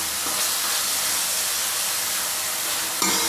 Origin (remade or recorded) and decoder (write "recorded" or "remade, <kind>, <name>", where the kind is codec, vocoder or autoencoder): recorded